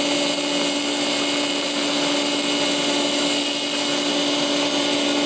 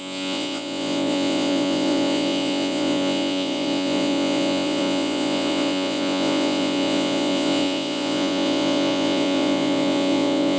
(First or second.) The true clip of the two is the first